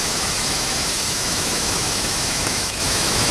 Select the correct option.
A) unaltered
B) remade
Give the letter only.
B